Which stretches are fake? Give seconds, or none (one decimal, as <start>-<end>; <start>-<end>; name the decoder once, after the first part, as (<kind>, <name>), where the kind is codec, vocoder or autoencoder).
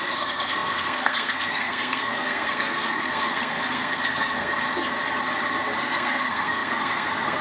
0.0-4.5 (codec, SNAC); 5.8-7.4